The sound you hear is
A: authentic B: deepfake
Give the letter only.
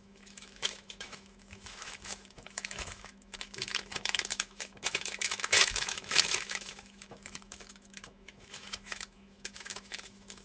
B